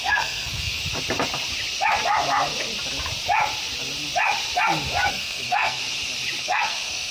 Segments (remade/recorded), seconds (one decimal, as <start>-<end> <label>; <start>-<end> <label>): 0.0-0.8 remade; 0.8-5.1 recorded; 5.1-5.8 remade; 5.8-6.4 recorded; 6.4-7.1 remade